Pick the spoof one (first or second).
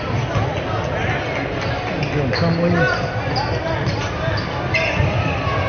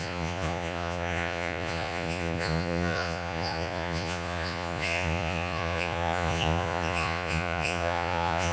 second